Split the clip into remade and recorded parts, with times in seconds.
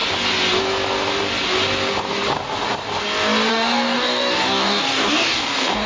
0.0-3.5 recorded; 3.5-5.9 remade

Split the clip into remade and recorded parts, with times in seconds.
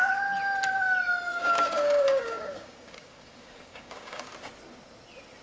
0.0-1.3 recorded; 1.3-4.3 remade; 4.3-5.4 recorded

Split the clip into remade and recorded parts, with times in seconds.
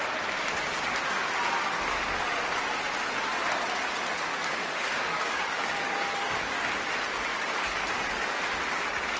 0.0-4.3 recorded; 4.3-6.8 remade; 6.8-7.3 recorded; 7.3-8.4 remade; 8.4-9.2 recorded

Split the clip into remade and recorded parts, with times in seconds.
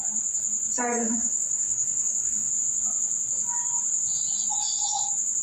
0.0-0.9 recorded; 0.9-2.5 remade; 2.5-5.4 recorded